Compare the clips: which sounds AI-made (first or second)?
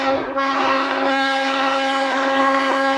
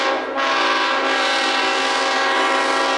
first